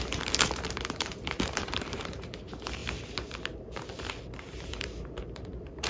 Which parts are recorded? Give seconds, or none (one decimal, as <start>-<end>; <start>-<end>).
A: 2.8-4.2